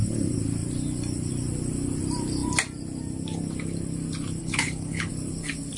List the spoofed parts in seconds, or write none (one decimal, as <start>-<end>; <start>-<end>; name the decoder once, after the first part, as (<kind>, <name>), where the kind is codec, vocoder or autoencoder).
4.4-5.1 (codec, HILCodec)